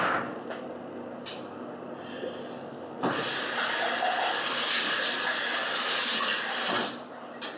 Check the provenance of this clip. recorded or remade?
recorded